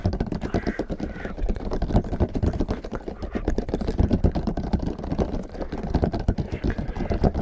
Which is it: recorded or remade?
recorded